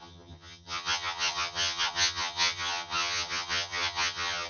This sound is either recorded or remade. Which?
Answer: remade